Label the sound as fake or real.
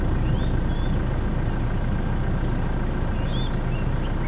real